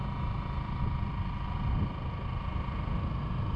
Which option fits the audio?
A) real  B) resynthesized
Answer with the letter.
A